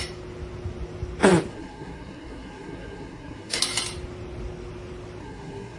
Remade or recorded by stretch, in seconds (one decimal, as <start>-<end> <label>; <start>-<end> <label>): 0.0-1.5 recorded; 1.5-3.6 remade; 3.6-5.2 recorded; 5.2-5.8 remade

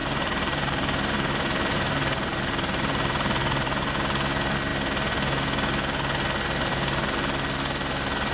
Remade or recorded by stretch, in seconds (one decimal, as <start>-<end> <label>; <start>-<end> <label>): 0.0-3.9 remade; 3.9-8.3 recorded

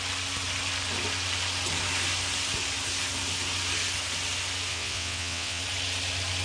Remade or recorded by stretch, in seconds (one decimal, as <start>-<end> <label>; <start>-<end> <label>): 0.0-4.7 recorded; 4.7-5.6 remade; 5.6-6.4 recorded

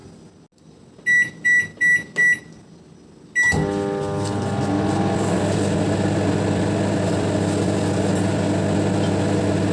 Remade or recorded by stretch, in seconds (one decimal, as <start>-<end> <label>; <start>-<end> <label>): 0.0-9.7 recorded

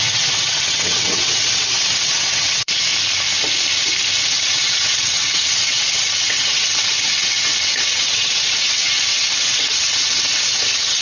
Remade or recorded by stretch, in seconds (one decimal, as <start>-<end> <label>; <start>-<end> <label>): 0.0-2.9 remade; 2.9-4.2 recorded; 4.2-11.0 remade

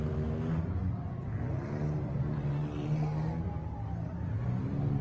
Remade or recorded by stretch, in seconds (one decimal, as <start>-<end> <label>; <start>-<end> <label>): 0.0-5.0 recorded

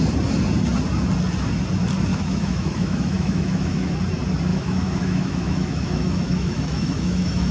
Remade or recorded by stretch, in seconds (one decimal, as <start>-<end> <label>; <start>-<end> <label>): 0.0-2.1 recorded; 2.1-3.9 remade; 3.9-4.5 recorded; 4.5-7.5 remade

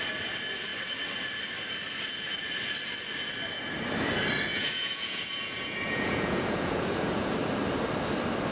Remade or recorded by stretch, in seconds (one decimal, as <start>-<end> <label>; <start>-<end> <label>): 0.0-4.5 recorded; 4.5-7.3 remade; 7.3-8.5 recorded